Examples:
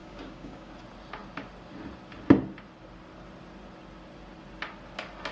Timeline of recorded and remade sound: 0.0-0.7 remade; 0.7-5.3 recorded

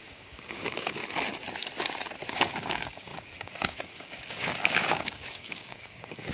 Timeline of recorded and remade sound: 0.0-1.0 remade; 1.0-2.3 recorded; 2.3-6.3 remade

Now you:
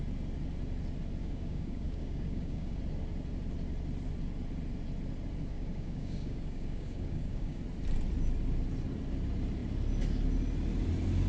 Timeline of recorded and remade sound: 0.0-1.2 recorded; 1.2-2.8 remade; 2.8-5.5 recorded; 5.5-7.6 remade; 7.6-11.3 recorded